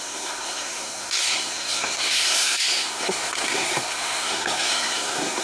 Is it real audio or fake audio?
fake